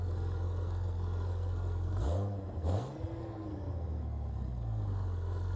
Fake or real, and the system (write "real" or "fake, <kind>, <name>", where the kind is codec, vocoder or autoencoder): fake, codec, SNAC